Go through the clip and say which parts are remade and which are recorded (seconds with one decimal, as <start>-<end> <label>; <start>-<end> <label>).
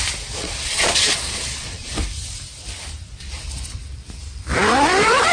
0.0-0.4 recorded; 0.4-1.9 remade; 1.9-5.3 recorded